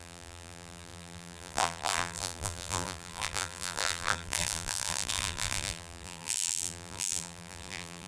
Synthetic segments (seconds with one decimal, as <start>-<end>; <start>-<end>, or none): 0.0-8.1